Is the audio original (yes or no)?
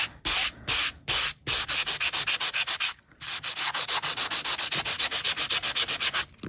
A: yes